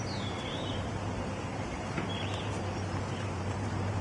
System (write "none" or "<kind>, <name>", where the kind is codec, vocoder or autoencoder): vocoder, BigVGAN v2